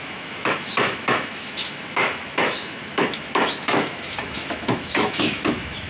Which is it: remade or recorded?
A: remade